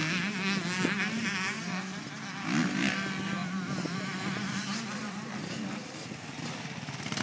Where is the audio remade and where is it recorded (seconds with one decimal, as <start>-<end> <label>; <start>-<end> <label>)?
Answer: 0.0-3.4 recorded; 3.4-7.2 remade